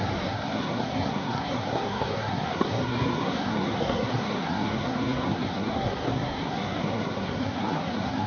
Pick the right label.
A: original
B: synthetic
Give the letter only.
B